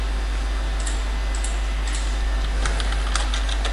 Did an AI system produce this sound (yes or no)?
no